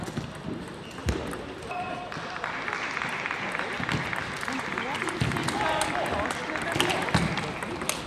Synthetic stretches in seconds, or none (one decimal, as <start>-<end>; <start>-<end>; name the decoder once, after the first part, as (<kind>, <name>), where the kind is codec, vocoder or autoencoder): none